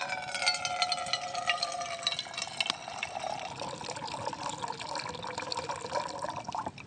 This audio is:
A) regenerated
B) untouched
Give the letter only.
B